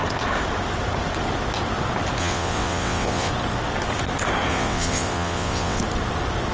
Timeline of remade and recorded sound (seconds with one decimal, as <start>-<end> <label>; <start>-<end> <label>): 0.0-2.2 recorded; 2.2-3.3 remade; 3.3-4.5 recorded; 4.5-5.8 remade; 5.8-6.5 recorded